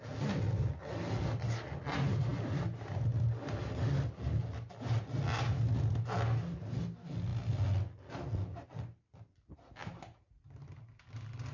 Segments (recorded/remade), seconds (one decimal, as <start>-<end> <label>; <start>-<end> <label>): 0.0-11.5 recorded